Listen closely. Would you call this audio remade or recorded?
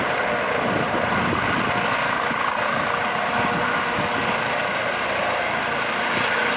recorded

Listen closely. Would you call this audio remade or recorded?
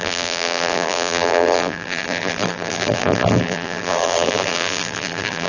remade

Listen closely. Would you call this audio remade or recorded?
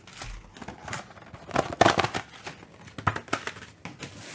recorded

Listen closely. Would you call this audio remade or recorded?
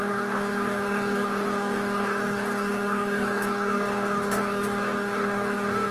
remade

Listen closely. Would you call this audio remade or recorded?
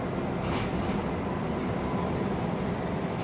recorded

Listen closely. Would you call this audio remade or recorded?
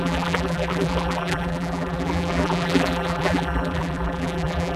remade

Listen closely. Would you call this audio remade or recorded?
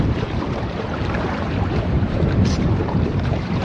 remade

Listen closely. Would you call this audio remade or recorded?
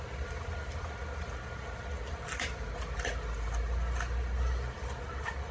recorded